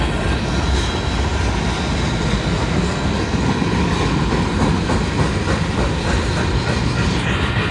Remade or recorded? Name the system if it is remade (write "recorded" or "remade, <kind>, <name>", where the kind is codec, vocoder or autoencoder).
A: recorded